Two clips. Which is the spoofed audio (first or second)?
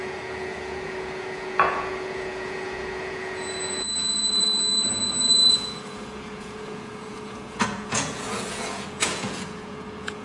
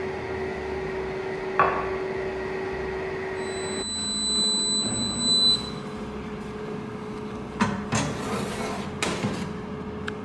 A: first